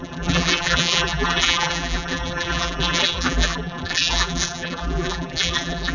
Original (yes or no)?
no